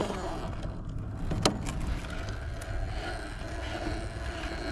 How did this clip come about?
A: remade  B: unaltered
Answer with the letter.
B